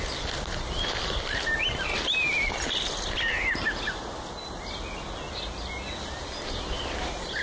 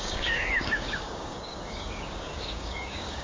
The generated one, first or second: second